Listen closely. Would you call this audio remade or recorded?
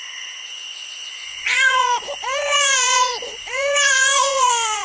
remade